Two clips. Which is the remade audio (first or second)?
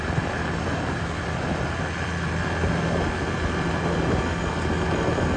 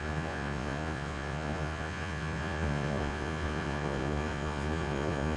second